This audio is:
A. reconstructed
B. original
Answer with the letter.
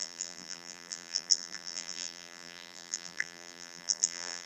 A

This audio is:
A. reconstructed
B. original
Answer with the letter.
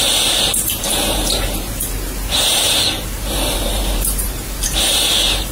A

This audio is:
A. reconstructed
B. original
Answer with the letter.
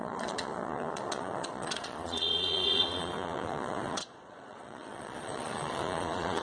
A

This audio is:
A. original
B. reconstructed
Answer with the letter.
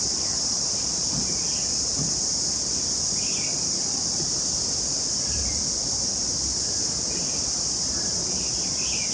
A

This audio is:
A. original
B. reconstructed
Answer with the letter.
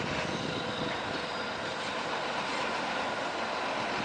A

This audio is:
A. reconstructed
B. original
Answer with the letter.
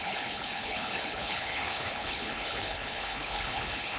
A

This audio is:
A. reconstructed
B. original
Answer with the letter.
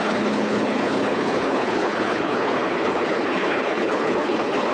A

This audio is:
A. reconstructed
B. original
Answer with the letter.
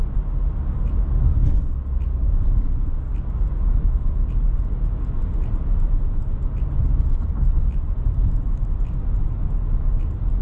B